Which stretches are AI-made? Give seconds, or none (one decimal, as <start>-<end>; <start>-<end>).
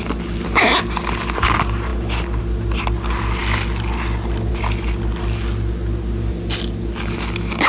none